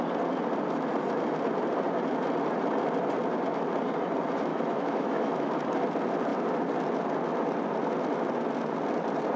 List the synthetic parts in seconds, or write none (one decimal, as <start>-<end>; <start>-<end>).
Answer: 4.5-5.5